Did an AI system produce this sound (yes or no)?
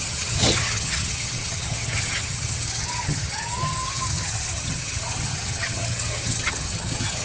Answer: yes